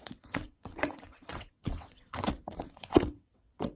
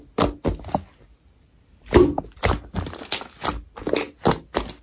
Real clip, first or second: second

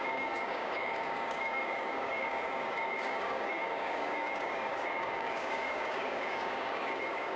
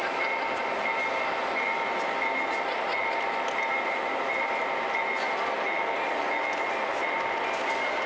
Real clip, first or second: second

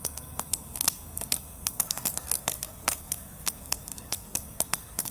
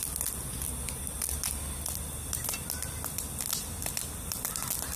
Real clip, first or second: second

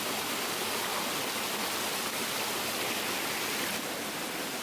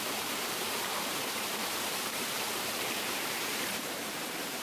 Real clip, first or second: first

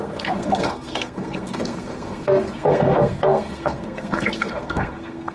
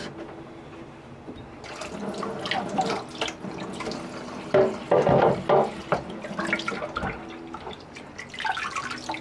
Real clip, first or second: second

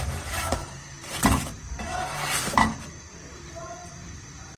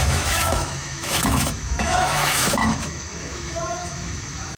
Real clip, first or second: first